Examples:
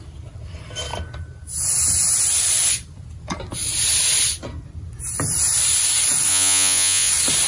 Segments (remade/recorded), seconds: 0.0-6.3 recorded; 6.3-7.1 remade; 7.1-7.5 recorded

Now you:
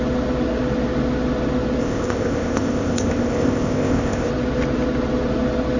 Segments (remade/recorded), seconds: 0.0-1.8 recorded; 1.8-4.3 remade; 4.3-5.8 recorded

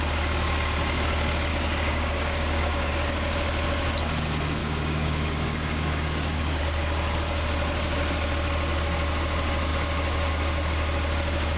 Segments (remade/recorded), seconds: 0.0-1.5 recorded; 1.5-2.9 remade; 2.9-4.6 recorded; 4.6-6.6 remade; 6.6-11.6 recorded